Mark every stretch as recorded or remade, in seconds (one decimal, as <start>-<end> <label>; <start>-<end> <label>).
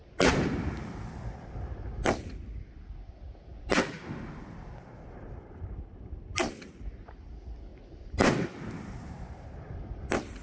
0.0-10.4 recorded